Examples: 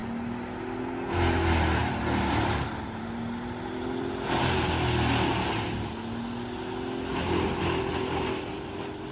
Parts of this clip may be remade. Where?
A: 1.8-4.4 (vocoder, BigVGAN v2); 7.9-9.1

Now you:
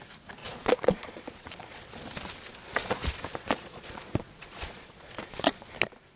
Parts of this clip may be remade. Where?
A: 0.4-1.8 (vocoder, Vocos); 2.8-5.7

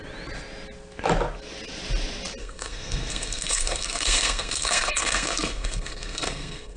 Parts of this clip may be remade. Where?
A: 2.4-6.8 (codec, SNAC)

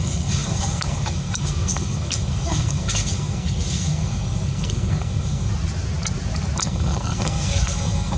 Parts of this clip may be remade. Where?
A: 0.0-5.5 (codec, SNAC); 6.6-8.2

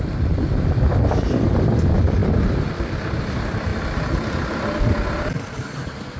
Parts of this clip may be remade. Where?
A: 0.0-6.2 (vocoder, BigVGAN v2)